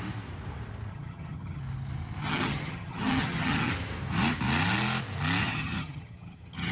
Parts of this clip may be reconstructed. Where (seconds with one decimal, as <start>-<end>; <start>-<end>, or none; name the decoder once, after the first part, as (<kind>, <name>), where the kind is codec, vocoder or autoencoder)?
0.9-1.6 (vocoder, HiFi-GAN); 2.2-3.7; 5.4-6.7